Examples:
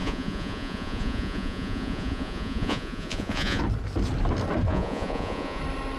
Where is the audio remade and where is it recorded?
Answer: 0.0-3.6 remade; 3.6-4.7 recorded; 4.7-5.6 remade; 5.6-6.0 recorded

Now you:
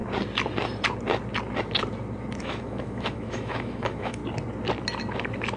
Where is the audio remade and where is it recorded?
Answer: 0.0-2.4 recorded; 2.4-4.2 remade; 4.2-5.6 recorded

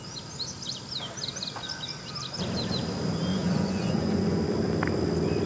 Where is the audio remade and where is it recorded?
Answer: 0.0-3.3 recorded; 3.3-4.4 remade; 4.4-5.5 recorded